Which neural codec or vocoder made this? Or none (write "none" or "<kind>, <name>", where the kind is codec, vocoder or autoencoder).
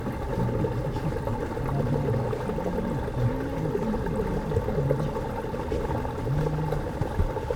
none